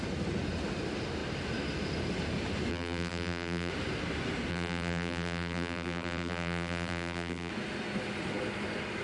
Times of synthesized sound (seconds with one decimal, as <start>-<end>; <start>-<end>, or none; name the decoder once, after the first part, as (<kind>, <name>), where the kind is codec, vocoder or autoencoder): 2.7-3.7 (vocoder, BigVGAN v2); 4.5-7.5